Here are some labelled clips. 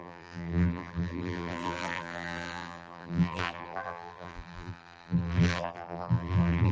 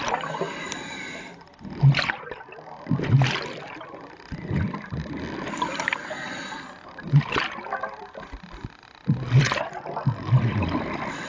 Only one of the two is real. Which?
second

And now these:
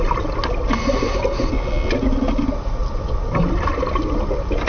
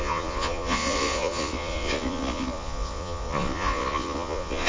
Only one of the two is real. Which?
first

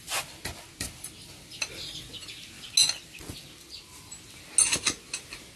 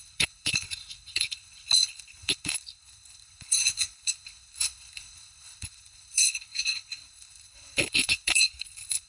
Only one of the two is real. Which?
first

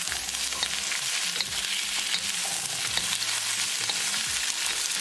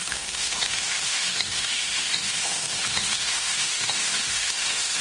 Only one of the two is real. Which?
first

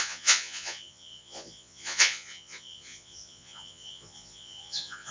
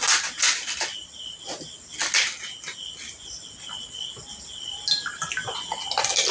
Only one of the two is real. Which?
second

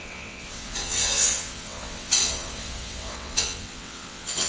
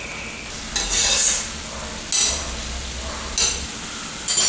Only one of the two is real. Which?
second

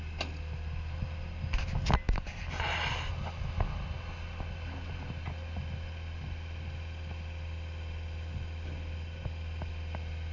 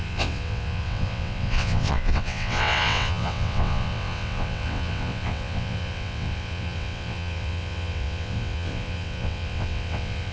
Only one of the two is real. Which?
first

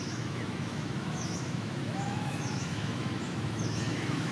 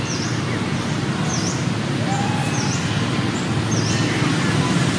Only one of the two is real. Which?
second